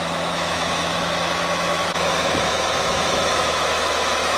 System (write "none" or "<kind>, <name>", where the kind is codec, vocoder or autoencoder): autoencoder, DAC-VAE